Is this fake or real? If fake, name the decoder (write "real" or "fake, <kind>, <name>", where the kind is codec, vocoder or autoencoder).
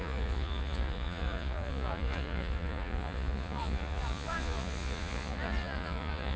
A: fake, vocoder, Vocos